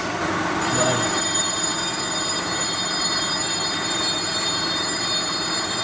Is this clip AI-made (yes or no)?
yes